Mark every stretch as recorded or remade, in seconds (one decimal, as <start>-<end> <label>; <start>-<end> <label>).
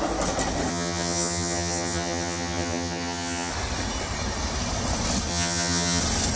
0.0-0.7 recorded; 0.7-3.5 remade; 3.5-5.3 recorded; 5.3-6.0 remade; 6.0-6.4 recorded